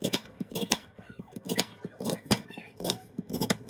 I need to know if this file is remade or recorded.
remade